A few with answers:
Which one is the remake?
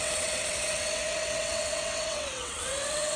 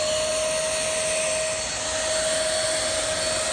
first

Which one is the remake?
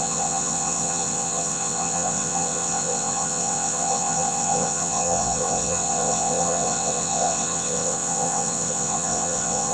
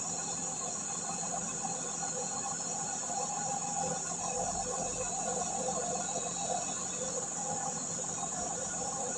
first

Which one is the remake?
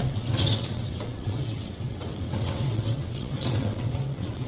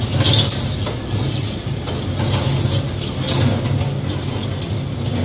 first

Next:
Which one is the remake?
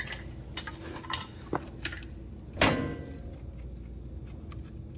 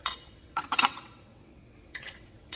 second